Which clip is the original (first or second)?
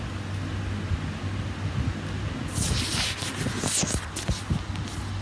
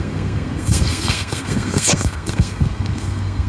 first